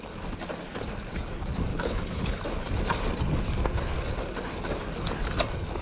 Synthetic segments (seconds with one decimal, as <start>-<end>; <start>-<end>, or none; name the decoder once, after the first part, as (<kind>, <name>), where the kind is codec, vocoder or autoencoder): 1.7-2.4 (codec, HILCodec)